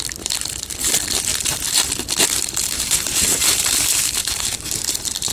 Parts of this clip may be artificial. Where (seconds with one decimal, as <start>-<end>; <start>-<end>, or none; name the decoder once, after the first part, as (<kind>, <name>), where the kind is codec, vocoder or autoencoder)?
2.6-3.7 (vocoder, BigVGAN v2); 4.2-5.3